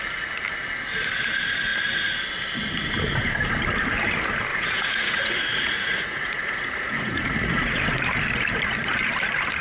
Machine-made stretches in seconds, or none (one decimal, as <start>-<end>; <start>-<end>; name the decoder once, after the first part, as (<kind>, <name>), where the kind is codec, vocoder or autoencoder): 4.5-7.8 (vocoder, Vocos)